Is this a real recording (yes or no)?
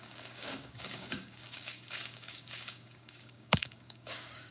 no